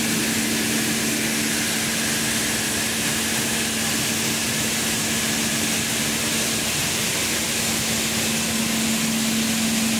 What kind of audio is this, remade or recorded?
recorded